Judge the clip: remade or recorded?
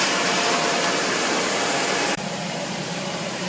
remade